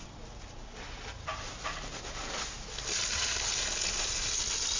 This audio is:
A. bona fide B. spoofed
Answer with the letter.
A